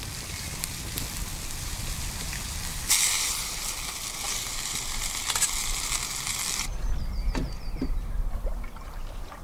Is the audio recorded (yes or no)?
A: no